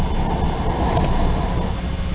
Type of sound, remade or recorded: recorded